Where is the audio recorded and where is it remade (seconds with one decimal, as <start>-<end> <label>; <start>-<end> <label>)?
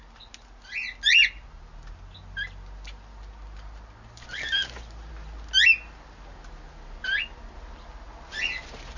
0.0-9.0 recorded